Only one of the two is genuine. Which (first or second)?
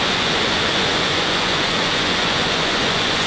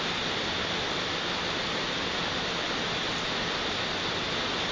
second